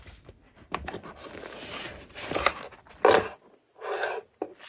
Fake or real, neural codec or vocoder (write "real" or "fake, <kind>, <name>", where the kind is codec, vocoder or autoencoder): real